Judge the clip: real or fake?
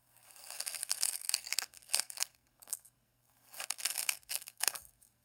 fake